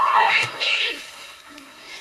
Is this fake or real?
fake